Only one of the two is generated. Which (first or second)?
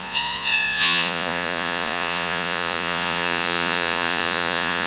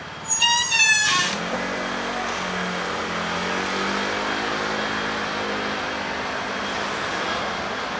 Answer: first